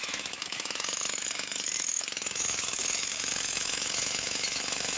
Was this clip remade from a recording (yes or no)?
yes